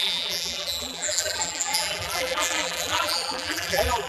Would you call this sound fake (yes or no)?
yes